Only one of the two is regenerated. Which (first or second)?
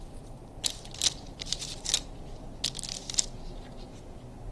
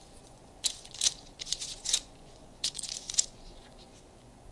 second